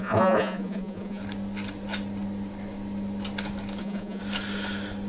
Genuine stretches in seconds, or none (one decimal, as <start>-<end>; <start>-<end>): 1.2-3.8; 4.2-5.1